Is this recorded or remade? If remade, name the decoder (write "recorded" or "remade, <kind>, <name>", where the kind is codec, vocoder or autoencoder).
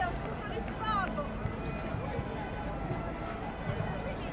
recorded